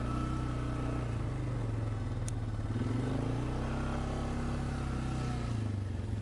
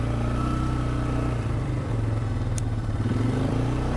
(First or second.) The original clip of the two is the first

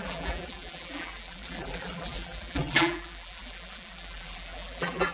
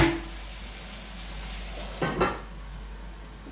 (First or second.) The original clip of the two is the second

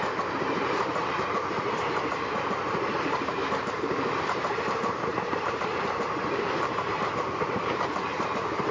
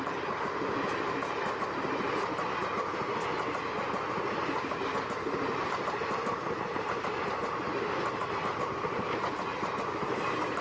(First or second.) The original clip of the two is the second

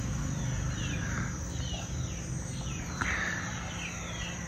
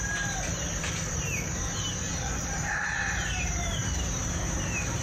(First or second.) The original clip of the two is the first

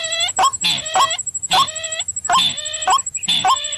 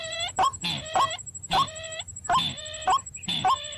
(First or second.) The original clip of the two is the first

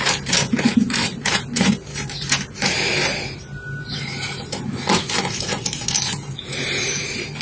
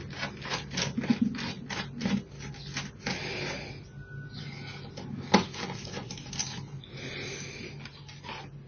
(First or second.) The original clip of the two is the second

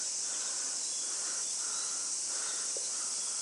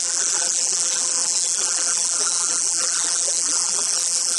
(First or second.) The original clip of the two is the first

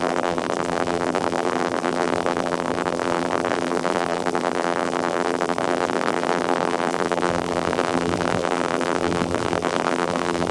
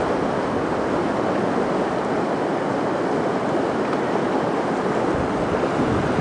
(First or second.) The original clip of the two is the second